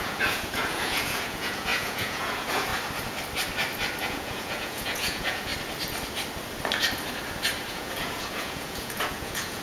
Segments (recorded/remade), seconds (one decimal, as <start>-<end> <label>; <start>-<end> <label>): 0.0-2.7 remade; 2.7-4.0 recorded; 4.0-5.5 remade; 5.5-7.7 recorded; 7.7-9.6 remade